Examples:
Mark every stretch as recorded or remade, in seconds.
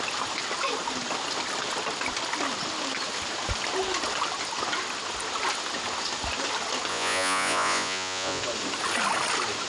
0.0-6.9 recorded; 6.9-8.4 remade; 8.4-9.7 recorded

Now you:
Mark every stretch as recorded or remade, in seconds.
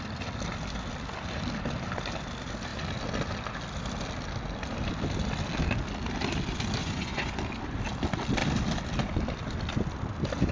0.0-6.8 recorded; 6.8-7.4 remade; 7.4-10.5 recorded